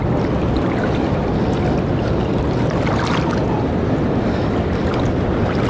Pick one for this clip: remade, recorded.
recorded